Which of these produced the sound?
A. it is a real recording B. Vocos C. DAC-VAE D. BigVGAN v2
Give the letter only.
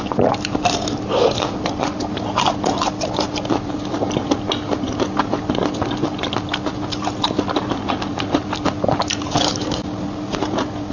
A